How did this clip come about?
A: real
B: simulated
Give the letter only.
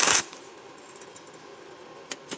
A